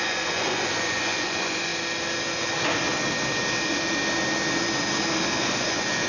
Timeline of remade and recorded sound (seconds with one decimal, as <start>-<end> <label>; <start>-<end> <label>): 0.0-1.7 remade; 1.7-5.4 recorded; 5.4-6.1 remade